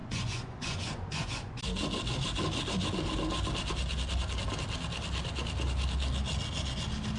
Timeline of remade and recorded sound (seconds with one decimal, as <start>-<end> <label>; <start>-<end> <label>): 0.0-1.6 remade; 1.6-7.2 recorded